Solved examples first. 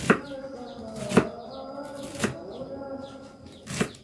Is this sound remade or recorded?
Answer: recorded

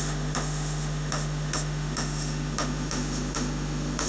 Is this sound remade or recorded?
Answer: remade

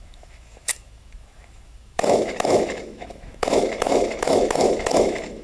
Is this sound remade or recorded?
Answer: remade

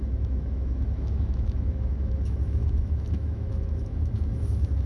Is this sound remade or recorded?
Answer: remade